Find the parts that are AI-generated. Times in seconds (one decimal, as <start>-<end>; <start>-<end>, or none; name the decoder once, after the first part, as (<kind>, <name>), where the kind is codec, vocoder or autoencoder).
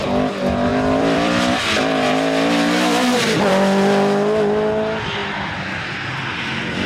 0.7-3.5 (vocoder, BigVGAN v2)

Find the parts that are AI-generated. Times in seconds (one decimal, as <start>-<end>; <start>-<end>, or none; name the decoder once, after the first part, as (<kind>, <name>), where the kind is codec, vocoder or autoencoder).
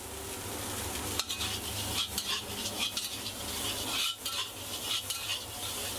none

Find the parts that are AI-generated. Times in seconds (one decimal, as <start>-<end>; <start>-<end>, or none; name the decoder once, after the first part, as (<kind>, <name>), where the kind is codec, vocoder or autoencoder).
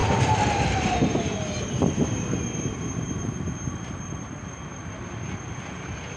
0.0-3.3 (vocoder, BigVGAN v2); 4.7-5.4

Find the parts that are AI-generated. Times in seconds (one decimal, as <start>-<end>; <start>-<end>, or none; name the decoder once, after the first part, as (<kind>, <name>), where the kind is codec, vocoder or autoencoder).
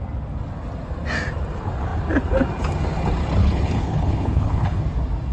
3.4-4.8 (codec, HILCodec)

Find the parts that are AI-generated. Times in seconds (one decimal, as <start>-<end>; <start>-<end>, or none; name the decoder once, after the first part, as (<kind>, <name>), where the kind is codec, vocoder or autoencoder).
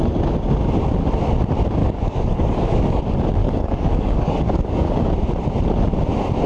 1.8-3.0 (codec, DAC); 3.4-5.1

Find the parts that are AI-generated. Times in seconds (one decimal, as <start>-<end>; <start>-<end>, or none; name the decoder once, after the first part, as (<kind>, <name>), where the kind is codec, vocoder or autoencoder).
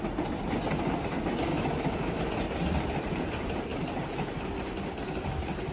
1.5-2.3 (autoencoder, DAC-VAE)